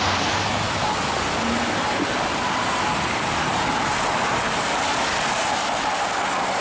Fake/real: real